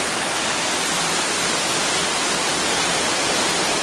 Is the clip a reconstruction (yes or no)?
no